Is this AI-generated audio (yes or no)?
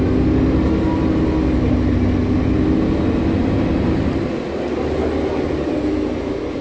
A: no